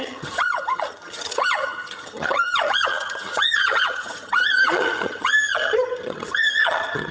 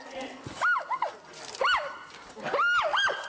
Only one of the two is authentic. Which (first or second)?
second